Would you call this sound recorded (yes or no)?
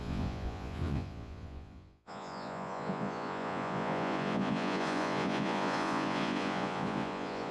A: no